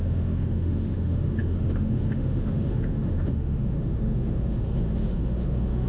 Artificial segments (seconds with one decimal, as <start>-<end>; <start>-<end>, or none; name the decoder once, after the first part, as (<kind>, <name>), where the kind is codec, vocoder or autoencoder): 0.0-5.9 (autoencoder, DAC-VAE)